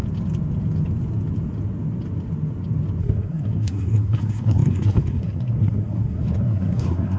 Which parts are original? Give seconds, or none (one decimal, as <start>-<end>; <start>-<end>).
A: 0.0-3.0